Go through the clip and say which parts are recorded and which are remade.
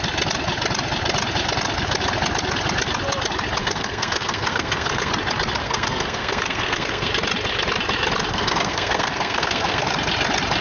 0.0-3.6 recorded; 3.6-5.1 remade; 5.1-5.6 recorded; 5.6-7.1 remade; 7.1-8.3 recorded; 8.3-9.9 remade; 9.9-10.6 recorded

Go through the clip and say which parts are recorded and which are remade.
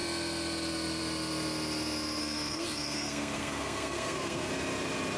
0.0-2.2 recorded; 2.2-4.5 remade; 4.5-5.2 recorded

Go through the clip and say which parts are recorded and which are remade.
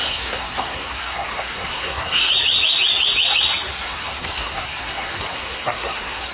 0.0-2.3 remade; 2.3-3.7 recorded; 3.7-6.3 remade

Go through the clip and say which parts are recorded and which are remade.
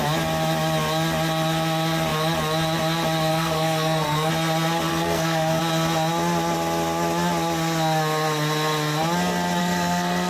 0.0-3.3 recorded; 3.3-4.3 remade; 4.3-4.9 recorded; 4.9-5.6 remade; 5.6-9.6 recorded; 9.6-10.3 remade